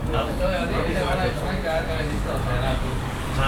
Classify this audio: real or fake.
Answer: fake